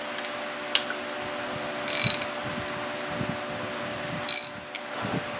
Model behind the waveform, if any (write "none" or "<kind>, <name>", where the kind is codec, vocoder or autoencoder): none